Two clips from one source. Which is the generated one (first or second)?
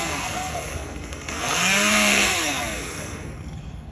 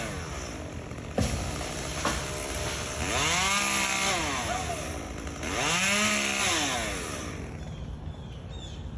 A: first